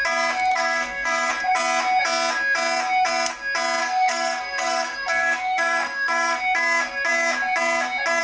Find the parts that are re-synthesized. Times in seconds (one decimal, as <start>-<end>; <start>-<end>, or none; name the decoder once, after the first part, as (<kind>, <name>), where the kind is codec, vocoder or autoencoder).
0.5-1.3 (codec, SNAC); 3.8-6.4